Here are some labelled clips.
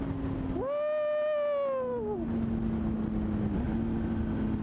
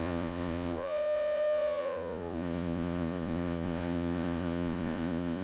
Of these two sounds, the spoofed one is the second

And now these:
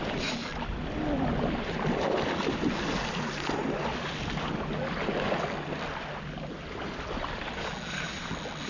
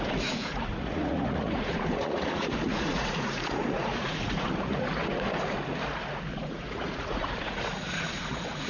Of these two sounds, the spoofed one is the second